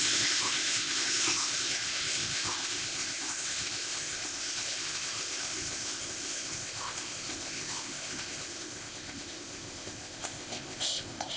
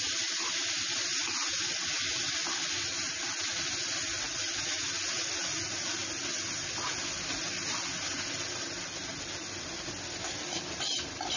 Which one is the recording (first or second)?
second